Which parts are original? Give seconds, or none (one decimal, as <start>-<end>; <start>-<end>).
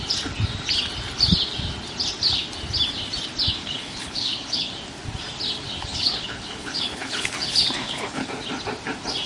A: 0.0-3.5; 4.7-5.9; 8.3-9.3